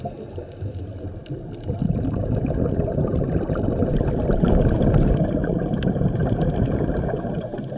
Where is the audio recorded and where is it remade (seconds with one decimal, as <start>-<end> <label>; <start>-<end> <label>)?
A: 0.0-7.8 recorded